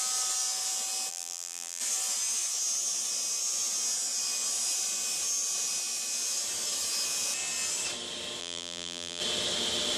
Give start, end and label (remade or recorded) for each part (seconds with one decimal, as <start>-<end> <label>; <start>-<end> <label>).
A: 0.0-1.1 recorded; 1.1-1.8 remade; 1.8-8.4 recorded; 8.4-9.2 remade; 9.2-10.0 recorded